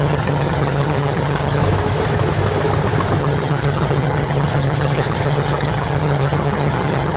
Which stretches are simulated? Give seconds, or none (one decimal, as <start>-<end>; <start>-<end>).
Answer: 0.0-1.6; 3.2-7.2

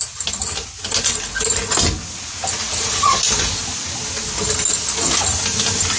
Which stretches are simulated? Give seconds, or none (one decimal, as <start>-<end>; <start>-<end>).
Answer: none

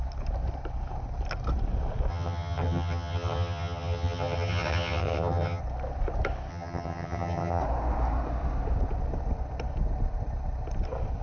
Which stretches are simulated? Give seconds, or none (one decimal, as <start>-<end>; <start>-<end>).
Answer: 2.1-5.6; 6.5-7.6